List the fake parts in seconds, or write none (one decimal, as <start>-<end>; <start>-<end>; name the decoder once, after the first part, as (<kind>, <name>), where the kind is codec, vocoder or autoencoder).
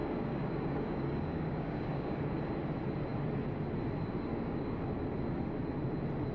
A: 0.0-2.2 (codec, DAC); 4.3-4.9